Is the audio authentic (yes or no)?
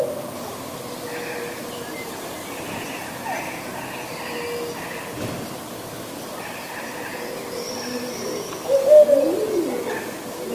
yes